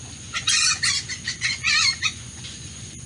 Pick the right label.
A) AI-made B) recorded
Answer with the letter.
A